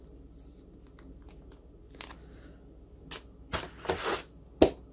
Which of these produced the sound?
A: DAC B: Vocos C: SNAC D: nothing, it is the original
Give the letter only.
D